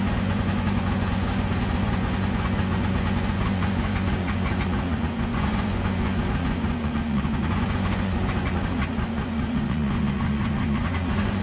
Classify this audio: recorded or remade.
remade